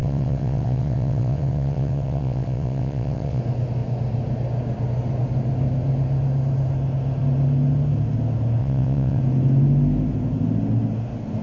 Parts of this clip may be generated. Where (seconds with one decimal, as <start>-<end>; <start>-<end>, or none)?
0.0-3.4; 8.6-9.2